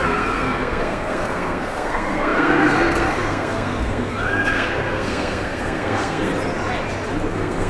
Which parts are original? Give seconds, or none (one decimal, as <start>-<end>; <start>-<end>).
6.3-7.3